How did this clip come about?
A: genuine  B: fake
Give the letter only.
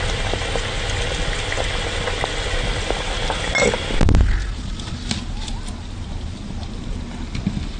A